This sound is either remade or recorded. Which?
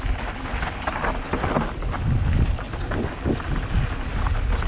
recorded